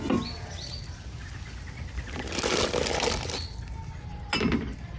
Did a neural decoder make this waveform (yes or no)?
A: no